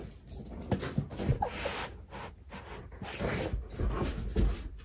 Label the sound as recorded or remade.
recorded